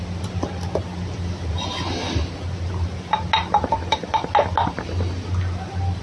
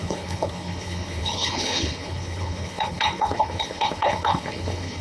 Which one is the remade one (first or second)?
second